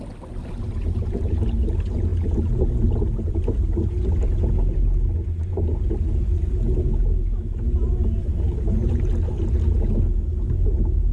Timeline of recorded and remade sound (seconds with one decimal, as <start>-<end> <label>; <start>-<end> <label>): 0.0-11.1 recorded